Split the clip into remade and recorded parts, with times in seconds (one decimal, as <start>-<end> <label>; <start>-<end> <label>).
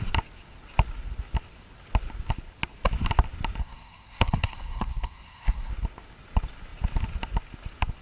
0.0-3.6 recorded; 3.6-5.7 remade; 5.7-8.0 recorded